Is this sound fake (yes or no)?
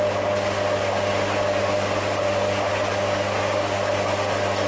no